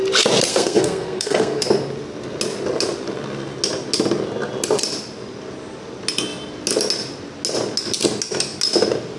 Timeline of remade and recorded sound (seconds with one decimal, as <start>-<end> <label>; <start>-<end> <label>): 0.0-0.5 recorded; 0.5-1.7 remade; 1.7-9.2 recorded